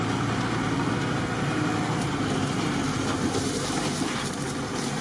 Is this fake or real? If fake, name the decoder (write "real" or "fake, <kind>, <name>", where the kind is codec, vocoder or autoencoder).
real